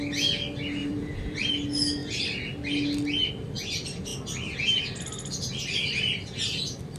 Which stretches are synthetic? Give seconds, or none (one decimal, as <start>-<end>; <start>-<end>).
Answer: 0.8-1.5